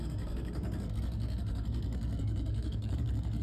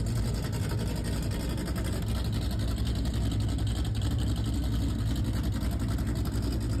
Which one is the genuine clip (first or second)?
second